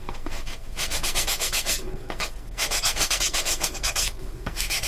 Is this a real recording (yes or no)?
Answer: no